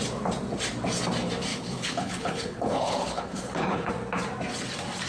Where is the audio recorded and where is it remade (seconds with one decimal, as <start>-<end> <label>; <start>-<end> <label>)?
0.0-1.5 recorded; 1.5-3.9 remade; 3.9-5.1 recorded